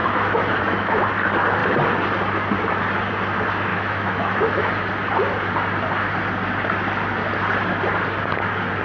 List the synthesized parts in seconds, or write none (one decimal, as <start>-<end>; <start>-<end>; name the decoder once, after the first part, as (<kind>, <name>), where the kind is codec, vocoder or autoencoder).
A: 0.0-1.1 (autoencoder, DAC-VAE); 3.7-4.7